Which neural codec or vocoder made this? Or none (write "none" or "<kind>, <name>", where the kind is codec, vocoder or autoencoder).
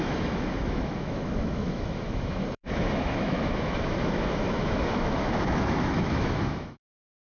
autoencoder, DAC-VAE